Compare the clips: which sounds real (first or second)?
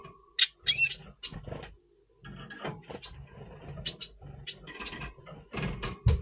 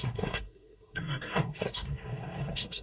first